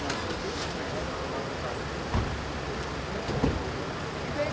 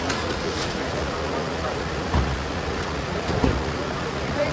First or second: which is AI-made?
second